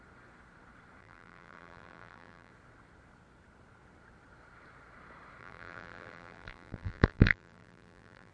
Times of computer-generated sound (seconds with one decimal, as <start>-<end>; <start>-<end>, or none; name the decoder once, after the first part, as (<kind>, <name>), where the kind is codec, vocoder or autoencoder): 1.0-2.5 (vocoder, BigVGAN v2); 5.4-8.3